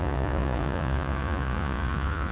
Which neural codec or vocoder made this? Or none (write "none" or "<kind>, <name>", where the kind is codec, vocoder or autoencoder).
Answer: vocoder, Vocos